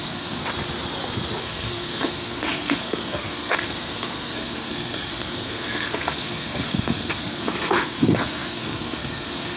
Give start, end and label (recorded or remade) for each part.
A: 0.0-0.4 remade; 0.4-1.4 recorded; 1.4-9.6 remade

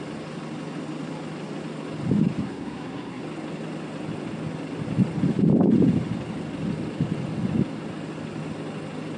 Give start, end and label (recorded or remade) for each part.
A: 0.0-2.4 recorded; 2.4-3.2 remade; 3.2-9.2 recorded

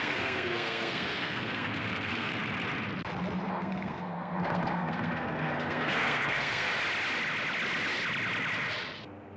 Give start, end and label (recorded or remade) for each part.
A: 0.0-2.3 remade; 2.3-3.5 recorded; 3.5-6.7 remade; 6.7-9.4 recorded

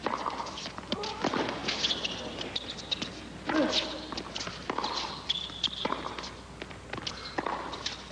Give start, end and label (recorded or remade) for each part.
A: 0.0-8.1 recorded

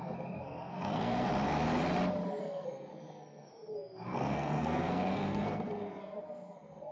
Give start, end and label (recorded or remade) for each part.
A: 0.0-1.3 remade; 1.3-2.4 recorded; 2.4-6.9 remade